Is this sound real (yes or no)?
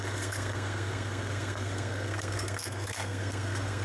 no